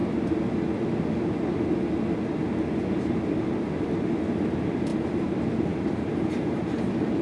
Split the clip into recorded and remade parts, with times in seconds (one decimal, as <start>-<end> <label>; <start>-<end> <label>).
0.0-4.9 recorded; 4.9-7.2 remade